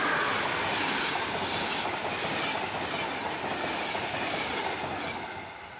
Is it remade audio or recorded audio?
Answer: recorded